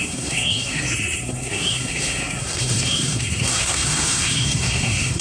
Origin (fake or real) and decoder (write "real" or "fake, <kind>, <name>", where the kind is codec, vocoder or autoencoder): fake, codec, SNAC